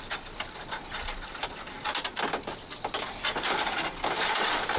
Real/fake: real